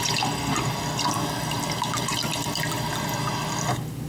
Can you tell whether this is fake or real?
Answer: real